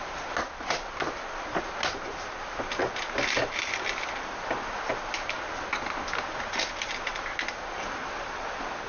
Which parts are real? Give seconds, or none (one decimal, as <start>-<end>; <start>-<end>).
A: 0.0-8.9